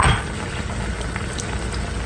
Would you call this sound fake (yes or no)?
no